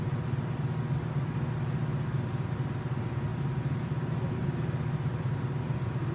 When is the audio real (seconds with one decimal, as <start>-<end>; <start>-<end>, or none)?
0.0-6.1